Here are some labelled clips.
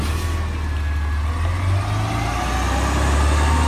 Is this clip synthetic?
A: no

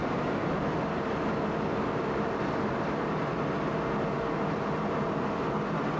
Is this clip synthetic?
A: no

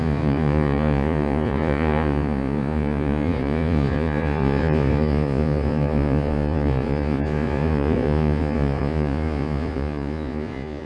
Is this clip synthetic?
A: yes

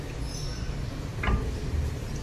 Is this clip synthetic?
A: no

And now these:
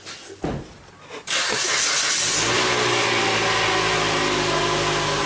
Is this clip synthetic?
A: no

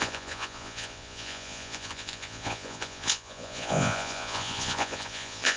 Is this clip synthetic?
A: yes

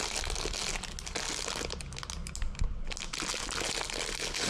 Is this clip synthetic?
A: no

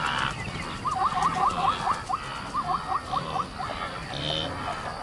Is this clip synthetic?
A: no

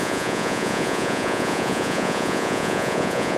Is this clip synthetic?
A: yes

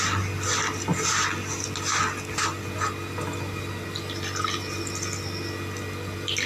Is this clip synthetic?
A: no